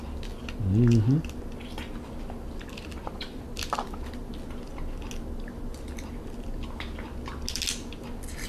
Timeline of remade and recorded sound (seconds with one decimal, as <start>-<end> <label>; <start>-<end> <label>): 0.0-2.8 recorded; 2.8-3.6 remade; 3.6-8.5 recorded